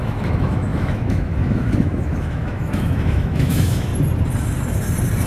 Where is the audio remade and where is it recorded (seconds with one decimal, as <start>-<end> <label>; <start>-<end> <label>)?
0.0-3.9 remade; 3.9-5.3 recorded